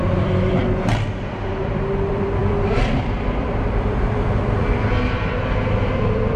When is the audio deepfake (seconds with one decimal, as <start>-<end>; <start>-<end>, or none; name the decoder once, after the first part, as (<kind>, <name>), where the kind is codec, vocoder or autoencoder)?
0.0-0.6 (vocoder, BigVGAN v2); 1.2-6.4

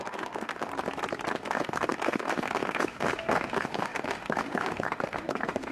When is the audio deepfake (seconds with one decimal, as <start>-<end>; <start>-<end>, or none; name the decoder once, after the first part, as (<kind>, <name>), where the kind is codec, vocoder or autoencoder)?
0.0-0.7 (autoencoder, DAC-VAE); 1.3-5.7

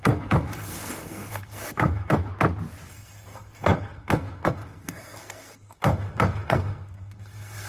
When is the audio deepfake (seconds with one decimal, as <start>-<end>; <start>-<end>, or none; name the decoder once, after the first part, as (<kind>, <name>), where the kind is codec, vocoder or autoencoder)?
0.0-2.3 (codec, SNAC); 2.9-7.7

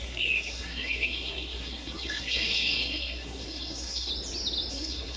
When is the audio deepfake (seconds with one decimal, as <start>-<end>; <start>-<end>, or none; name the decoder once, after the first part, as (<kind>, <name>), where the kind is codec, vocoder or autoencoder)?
0.0-4.1 (codec, SNAC); 4.7-5.2

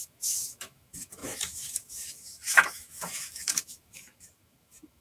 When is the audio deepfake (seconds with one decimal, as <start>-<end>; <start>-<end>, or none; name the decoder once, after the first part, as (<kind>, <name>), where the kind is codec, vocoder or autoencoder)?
0.0-5.0 (autoencoder, DAC-VAE)

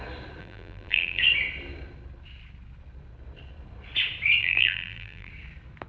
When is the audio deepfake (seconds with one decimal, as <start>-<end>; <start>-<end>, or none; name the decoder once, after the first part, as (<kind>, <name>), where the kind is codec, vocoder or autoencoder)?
0.4-1.2 (vocoder, BigVGAN v2); 4.4-5.3